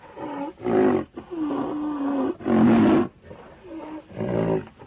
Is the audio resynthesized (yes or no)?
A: no